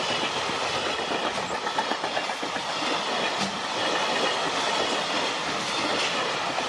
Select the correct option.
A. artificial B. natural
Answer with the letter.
B